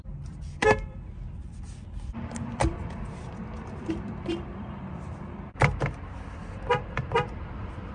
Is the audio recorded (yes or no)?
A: no